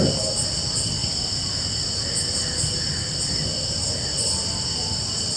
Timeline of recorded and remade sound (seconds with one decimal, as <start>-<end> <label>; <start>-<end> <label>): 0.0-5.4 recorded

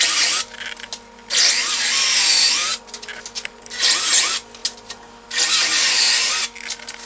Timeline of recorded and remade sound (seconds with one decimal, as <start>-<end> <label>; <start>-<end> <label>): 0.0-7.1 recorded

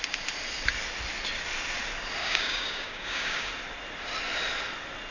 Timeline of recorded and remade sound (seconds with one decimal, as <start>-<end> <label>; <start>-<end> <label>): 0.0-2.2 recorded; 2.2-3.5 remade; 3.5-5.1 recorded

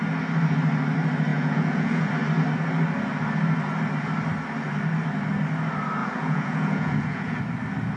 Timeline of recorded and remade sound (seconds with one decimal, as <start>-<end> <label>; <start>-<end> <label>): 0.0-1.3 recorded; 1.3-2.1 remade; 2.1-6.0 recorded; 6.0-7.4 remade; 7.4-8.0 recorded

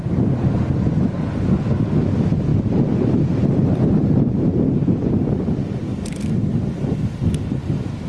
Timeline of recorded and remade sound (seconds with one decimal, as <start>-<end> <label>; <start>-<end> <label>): 0.0-8.1 recorded